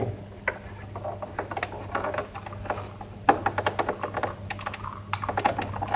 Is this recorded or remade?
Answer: recorded